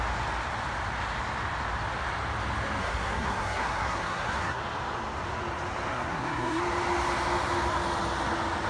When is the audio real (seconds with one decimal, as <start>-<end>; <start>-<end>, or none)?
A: 0.0-2.8; 4.6-5.9; 6.6-8.7